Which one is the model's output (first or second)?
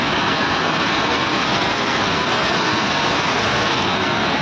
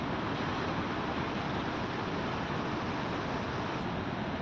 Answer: first